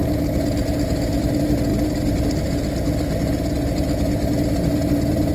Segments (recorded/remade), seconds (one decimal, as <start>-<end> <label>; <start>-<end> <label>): 0.0-5.3 recorded